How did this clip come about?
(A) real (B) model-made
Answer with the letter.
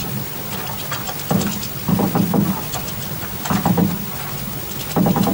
A